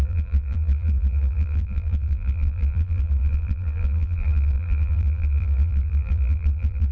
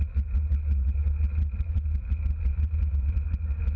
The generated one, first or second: first